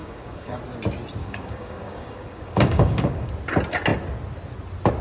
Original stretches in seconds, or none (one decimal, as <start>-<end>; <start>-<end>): 0.6-1.2; 3.3-5.0